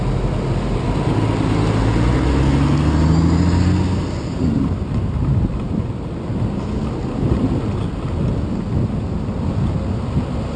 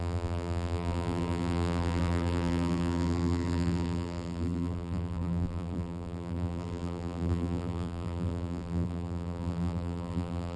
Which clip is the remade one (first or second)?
second